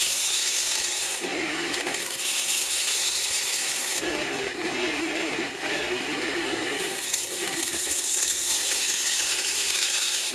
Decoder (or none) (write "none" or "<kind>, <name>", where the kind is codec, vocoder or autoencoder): codec, SNAC